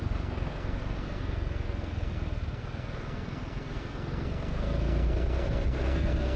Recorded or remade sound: remade